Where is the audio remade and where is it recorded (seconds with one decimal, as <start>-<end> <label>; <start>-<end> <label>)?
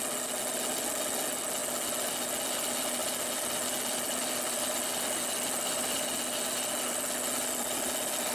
0.0-8.3 recorded